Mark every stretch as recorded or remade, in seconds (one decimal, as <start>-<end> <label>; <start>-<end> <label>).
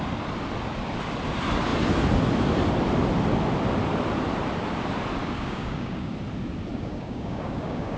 0.0-5.2 recorded; 5.2-6.1 remade; 6.1-6.7 recorded; 6.7-8.0 remade